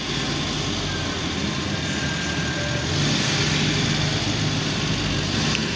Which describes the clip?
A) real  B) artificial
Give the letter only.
A